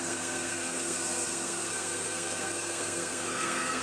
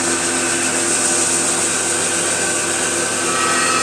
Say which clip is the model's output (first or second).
first